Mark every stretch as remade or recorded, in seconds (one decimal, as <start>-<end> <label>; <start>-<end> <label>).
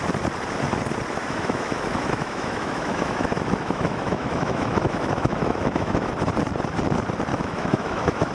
0.0-1.2 recorded; 1.2-6.1 remade; 6.1-7.3 recorded; 7.3-8.3 remade